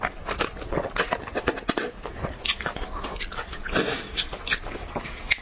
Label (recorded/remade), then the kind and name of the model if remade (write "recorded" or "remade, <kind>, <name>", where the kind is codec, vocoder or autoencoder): recorded